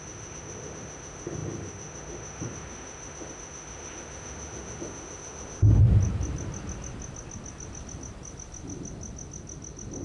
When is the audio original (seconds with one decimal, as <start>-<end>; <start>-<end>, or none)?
5.8-10.0